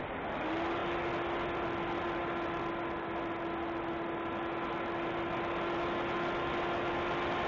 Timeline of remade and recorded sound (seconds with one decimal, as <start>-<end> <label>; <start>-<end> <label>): 0.0-7.5 recorded